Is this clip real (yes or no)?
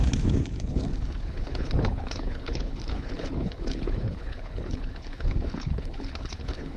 no